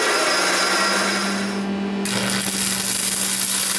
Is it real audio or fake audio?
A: real